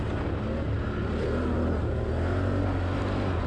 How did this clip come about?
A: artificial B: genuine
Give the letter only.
B